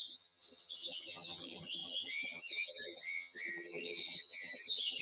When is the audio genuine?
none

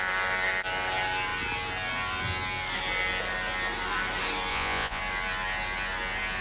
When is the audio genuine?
0.0-4.5; 5.0-6.4

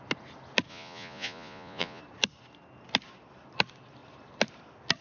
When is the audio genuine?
0.0-0.7; 2.0-5.0

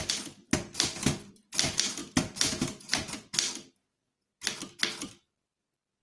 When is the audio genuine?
0.0-2.0; 3.1-6.0

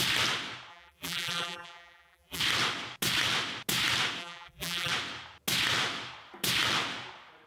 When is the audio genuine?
0.0-0.7; 2.4-4.2; 4.9-7.5